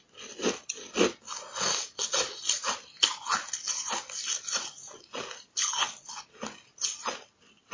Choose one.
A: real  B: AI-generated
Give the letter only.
A